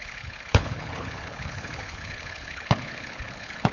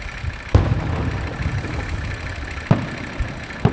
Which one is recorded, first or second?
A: second